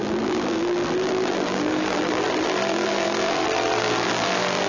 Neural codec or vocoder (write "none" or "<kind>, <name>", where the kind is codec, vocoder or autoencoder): vocoder, BigVGAN v2